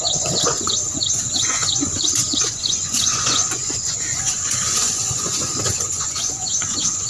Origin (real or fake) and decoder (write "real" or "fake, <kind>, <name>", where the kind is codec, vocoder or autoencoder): fake, vocoder, Vocos